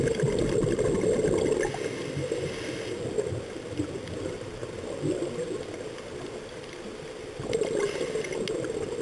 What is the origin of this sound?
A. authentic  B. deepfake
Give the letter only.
A